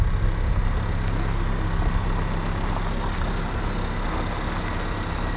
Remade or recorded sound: recorded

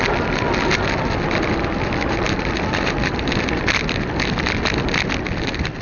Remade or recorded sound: recorded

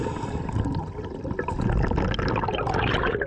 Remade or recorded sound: recorded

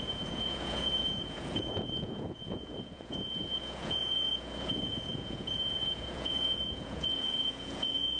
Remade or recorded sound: remade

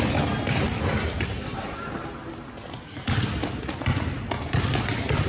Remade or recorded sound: recorded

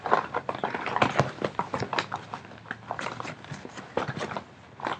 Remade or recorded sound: recorded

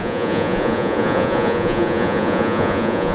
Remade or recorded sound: remade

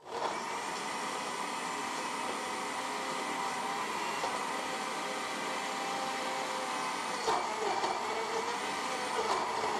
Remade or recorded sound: recorded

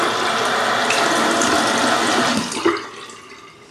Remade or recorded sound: recorded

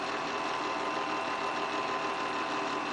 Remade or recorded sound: recorded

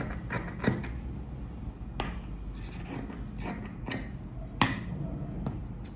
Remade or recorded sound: recorded